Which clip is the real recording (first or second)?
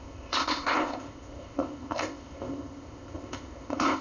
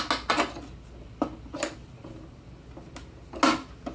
second